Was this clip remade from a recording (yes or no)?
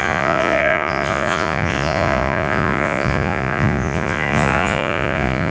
yes